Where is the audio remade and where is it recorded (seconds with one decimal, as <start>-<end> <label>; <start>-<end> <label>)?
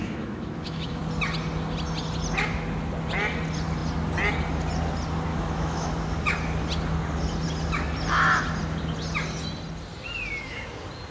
0.0-1.0 remade; 1.0-5.3 recorded; 5.3-5.9 remade; 5.9-11.1 recorded